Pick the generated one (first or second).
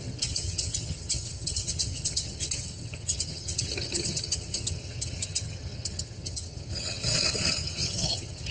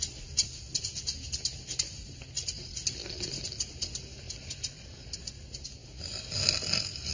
first